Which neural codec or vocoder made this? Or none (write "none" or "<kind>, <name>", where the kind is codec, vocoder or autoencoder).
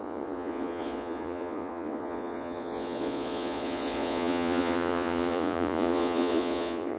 vocoder, Vocos